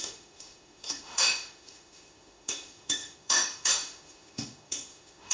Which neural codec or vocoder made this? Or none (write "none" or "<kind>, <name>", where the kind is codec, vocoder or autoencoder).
autoencoder, DAC-VAE